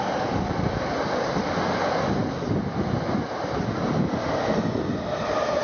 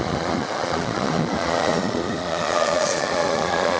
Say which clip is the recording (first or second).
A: first